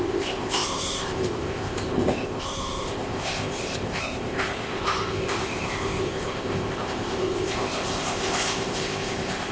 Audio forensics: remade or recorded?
remade